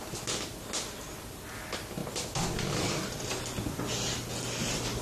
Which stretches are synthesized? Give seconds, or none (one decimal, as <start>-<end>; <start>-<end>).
none